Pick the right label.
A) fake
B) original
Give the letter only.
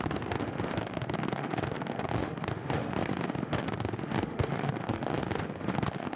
A